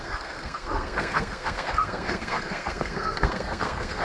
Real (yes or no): no